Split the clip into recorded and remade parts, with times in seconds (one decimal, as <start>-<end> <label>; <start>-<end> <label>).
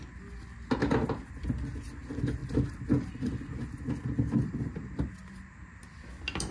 0.0-6.5 recorded